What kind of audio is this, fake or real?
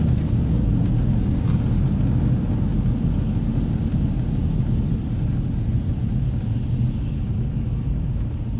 real